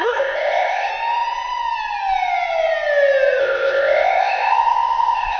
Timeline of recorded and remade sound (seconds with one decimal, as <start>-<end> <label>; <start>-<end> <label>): 0.0-0.9 remade; 0.9-3.4 recorded; 3.4-5.4 remade